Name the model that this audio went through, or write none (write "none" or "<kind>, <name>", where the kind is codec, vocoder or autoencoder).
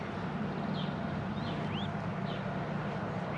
none